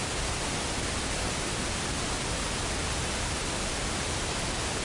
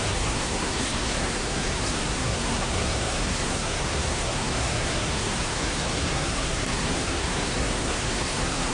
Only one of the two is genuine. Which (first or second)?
first